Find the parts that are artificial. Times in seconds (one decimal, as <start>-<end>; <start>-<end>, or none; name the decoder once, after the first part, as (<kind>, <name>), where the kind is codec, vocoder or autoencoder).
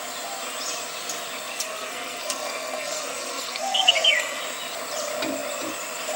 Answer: 1.5-4.4 (codec, SNAC)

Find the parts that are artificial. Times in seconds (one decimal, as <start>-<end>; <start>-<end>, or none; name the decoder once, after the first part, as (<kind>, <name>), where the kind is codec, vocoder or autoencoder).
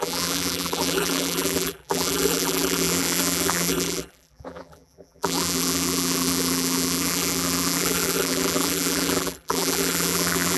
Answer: 0.0-10.6 (vocoder, BigVGAN v2)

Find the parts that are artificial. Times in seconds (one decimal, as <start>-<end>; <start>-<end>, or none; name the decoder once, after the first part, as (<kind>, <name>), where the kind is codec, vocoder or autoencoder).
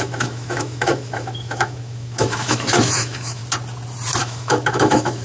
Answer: 0.0-3.4 (autoencoder, DAC-VAE); 4.2-5.2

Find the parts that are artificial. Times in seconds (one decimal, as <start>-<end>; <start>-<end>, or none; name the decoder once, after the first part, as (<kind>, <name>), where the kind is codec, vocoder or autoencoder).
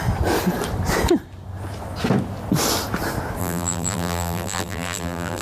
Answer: 3.4-5.4 (vocoder, BigVGAN v2)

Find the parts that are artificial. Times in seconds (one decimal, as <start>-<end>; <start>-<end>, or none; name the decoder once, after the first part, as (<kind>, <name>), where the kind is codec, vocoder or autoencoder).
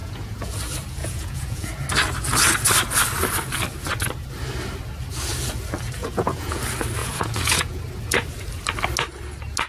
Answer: 0.0-0.6 (vocoder, Vocos); 1.0-1.7; 6.0-6.6; 7.0-7.8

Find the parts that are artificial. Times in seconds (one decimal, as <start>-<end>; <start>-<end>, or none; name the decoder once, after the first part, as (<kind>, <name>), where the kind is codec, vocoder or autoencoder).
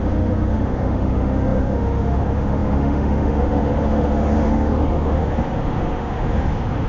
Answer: 0.0-6.9 (autoencoder, DAC-VAE)